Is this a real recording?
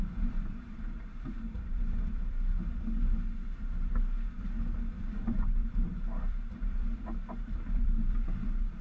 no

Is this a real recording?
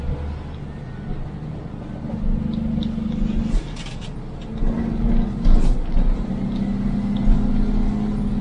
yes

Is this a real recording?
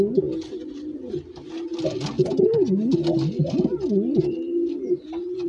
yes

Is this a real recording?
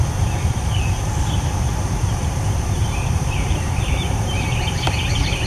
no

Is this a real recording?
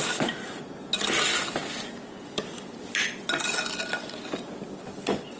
yes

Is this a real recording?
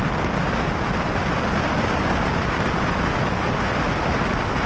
yes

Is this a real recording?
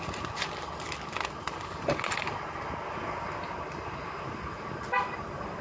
yes